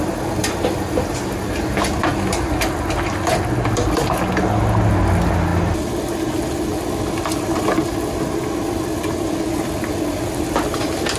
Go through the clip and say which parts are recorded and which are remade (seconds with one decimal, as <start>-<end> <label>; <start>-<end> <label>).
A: 0.0-11.2 recorded